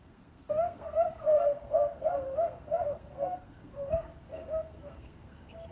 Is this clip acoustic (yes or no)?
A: no